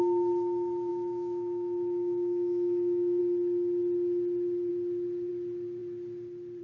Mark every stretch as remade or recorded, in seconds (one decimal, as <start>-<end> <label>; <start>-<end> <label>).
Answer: 0.0-0.9 recorded; 0.9-3.2 remade; 3.2-6.6 recorded